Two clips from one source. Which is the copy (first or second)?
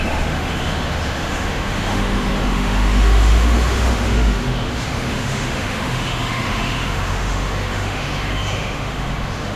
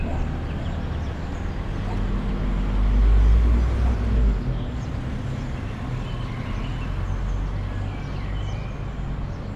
first